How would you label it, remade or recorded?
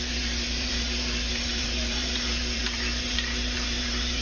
remade